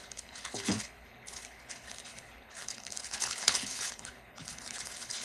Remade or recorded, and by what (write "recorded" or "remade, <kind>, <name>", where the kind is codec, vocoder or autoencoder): remade, codec, HILCodec